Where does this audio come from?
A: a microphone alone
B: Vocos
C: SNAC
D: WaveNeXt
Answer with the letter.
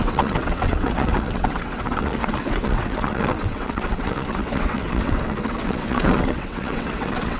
D